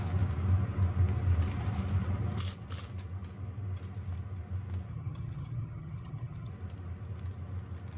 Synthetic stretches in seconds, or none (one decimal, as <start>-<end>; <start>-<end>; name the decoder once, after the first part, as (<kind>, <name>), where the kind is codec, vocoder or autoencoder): 4.9-6.5 (vocoder, HiFi-GAN)